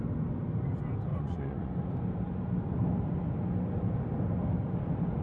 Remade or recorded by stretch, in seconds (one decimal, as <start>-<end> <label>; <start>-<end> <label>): 0.0-1.1 recorded; 1.1-1.7 remade; 1.7-5.2 recorded